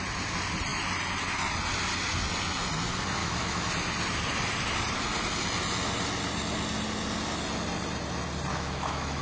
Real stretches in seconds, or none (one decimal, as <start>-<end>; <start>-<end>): 0.0-3.2; 3.7-8.5